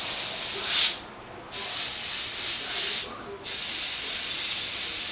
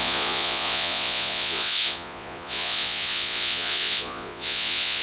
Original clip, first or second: first